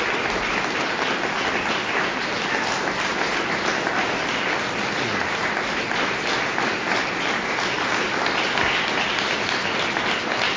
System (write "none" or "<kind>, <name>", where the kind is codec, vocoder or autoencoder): none